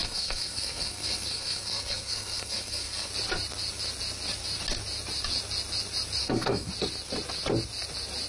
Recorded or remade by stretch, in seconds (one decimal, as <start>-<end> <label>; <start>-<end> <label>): 0.0-3.1 remade; 3.1-6.2 recorded; 6.2-6.7 remade; 6.7-8.3 recorded